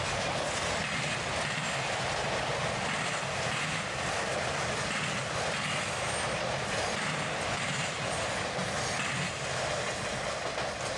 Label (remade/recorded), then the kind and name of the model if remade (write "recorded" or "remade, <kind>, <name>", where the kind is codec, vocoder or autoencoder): recorded